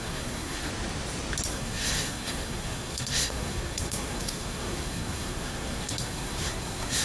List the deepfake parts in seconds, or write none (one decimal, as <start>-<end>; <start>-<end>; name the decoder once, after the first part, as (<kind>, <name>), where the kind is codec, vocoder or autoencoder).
0.0-0.7 (codec, SNAC); 1.5-7.0